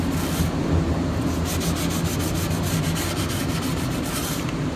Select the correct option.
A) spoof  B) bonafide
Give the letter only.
B